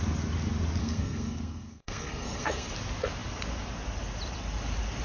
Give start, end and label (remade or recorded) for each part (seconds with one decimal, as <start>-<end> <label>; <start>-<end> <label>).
0.0-0.8 recorded; 0.8-2.7 remade; 2.7-5.0 recorded